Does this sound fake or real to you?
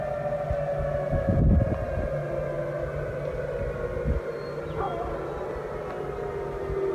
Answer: real